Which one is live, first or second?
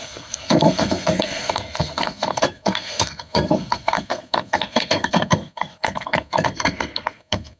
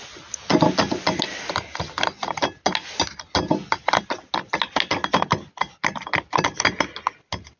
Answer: second